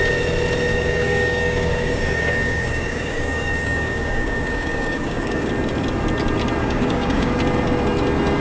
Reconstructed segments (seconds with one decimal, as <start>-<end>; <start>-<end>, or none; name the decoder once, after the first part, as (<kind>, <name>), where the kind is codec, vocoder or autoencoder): 0.7-5.5 (codec, DAC); 6.6-7.3